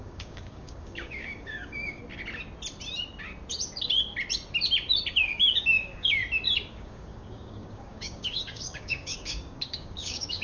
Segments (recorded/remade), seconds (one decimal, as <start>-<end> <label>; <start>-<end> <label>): 0.0-2.0 remade; 2.0-5.1 recorded; 5.1-6.2 remade; 6.2-6.7 recorded; 6.7-10.4 remade